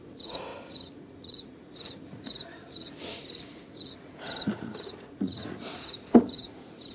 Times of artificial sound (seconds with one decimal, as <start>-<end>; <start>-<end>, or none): 0.0-6.9

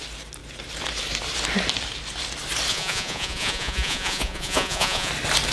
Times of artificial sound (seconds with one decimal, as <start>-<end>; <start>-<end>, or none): 2.7-5.1

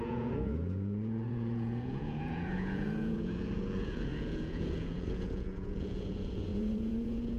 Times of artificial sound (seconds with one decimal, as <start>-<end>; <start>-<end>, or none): 0.0-7.4

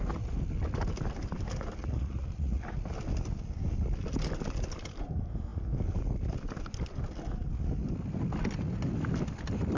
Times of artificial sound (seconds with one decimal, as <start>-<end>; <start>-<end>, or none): 1.8-2.6

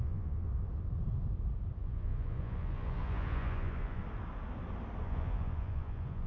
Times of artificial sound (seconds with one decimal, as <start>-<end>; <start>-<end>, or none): 0.0-0.5; 1.8-4.0; 5.0-6.3